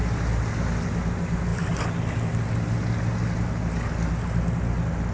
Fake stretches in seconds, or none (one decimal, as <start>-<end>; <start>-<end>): none